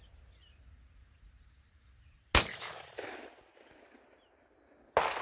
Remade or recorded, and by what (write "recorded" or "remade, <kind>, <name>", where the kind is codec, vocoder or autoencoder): recorded